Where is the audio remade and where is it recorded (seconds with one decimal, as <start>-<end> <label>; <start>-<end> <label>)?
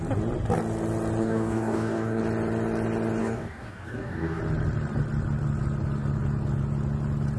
0.0-1.2 recorded; 1.2-2.2 remade; 2.2-3.2 recorded; 3.2-4.4 remade; 4.4-7.4 recorded